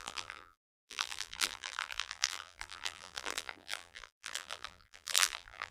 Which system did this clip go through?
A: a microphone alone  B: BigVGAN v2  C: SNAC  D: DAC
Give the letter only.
B